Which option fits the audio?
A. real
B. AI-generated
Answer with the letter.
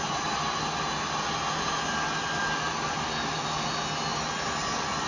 A